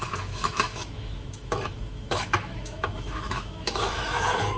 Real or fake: fake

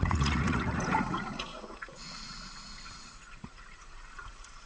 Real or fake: fake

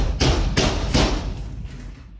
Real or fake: real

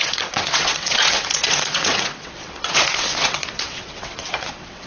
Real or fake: fake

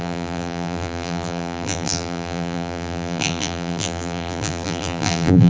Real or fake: fake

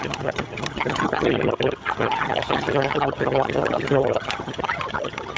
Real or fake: fake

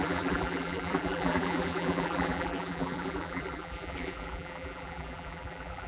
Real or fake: fake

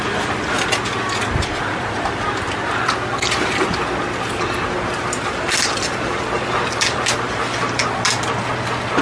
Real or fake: real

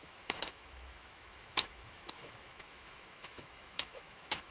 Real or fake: fake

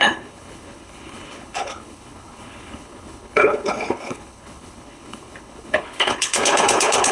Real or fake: fake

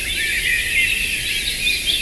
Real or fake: real